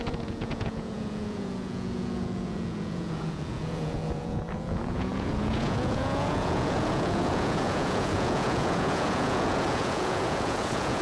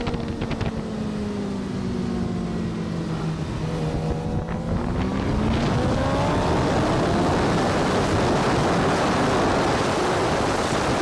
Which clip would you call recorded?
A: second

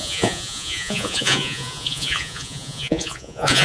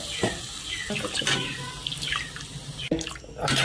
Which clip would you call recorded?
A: second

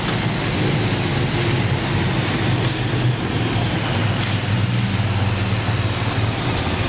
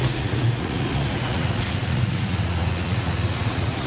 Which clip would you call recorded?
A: first